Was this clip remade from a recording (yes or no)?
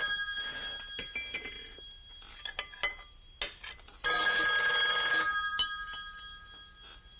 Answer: no